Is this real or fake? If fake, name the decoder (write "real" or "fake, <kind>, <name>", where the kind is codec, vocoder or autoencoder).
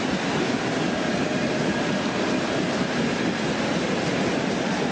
real